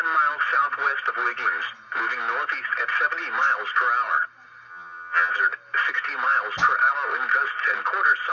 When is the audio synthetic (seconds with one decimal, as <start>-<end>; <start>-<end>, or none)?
4.7-5.3